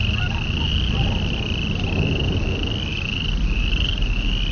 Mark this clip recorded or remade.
recorded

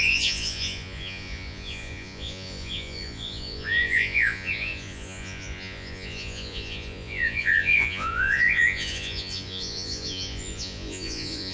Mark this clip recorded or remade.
remade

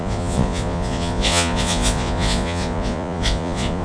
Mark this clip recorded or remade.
remade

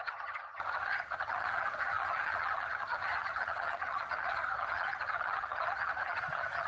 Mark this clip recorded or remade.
remade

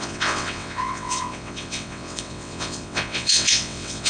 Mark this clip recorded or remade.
remade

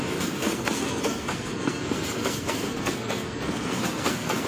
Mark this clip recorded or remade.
remade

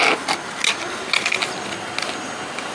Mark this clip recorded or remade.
recorded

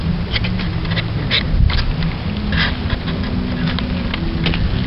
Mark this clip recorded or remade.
recorded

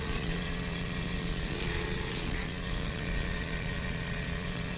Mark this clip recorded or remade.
remade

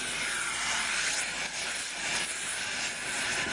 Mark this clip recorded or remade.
recorded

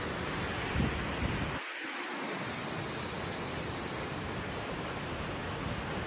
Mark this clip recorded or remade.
recorded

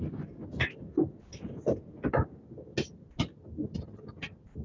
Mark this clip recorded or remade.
recorded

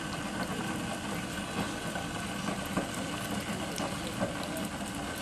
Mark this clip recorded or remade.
recorded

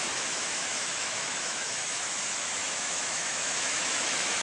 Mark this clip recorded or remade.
remade